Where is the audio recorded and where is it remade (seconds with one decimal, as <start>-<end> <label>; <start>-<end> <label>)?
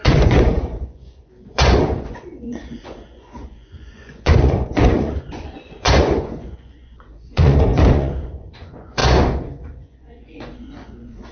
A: 0.0-11.3 remade